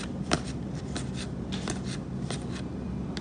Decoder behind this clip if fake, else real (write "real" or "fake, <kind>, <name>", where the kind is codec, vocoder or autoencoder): real